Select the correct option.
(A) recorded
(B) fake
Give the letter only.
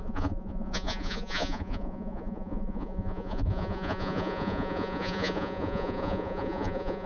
B